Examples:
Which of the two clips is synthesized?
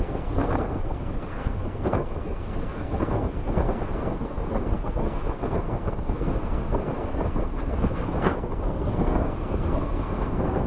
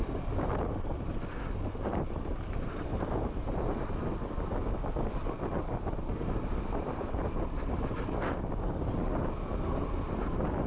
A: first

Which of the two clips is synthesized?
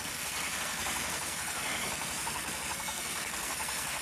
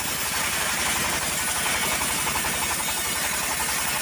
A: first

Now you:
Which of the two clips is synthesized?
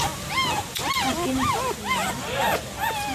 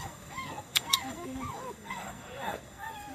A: second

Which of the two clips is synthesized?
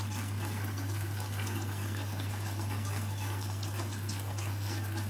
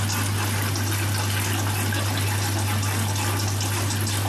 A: first